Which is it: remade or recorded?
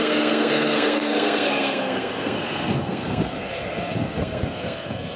remade